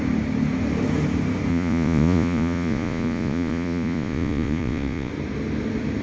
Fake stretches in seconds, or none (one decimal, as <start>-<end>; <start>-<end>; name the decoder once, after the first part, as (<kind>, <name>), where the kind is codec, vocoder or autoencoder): 1.5-5.1 (vocoder, Vocos)